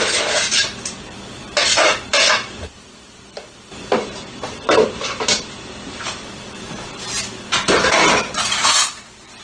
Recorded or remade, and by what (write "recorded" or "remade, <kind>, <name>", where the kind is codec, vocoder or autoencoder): remade, vocoder, BigVGAN v2